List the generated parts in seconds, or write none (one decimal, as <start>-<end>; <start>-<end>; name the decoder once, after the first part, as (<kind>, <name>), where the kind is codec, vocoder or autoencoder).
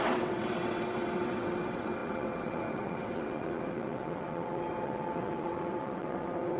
0.0-6.6 (vocoder, WaveNeXt)